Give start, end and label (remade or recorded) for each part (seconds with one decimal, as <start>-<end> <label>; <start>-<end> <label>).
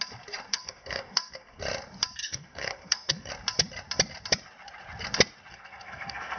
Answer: 0.0-0.5 recorded; 0.5-1.6 remade; 1.6-2.2 recorded; 2.2-3.3 remade; 3.3-5.5 recorded; 5.5-6.4 remade